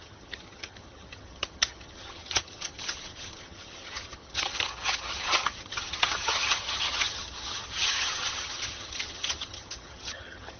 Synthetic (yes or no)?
yes